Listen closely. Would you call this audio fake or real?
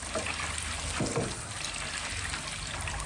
real